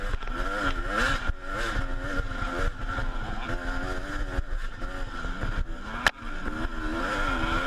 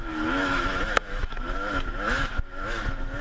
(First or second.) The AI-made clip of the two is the second